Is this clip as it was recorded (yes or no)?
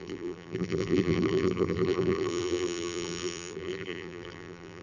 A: no